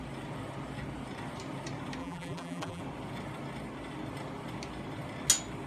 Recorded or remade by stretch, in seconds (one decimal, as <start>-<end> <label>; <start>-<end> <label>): 0.0-2.0 recorded; 2.0-2.8 remade; 2.8-5.7 recorded